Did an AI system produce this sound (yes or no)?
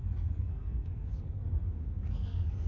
yes